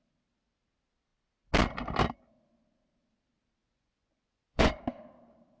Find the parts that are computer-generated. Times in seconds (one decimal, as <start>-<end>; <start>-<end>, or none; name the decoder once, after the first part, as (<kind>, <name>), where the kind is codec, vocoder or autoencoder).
3.6-4.7 (vocoder, Vocos)